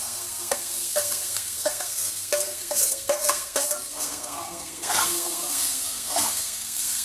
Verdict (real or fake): fake